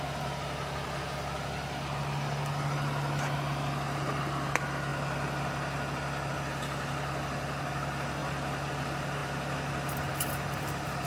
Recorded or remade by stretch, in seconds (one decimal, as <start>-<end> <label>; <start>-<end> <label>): 0.0-11.1 recorded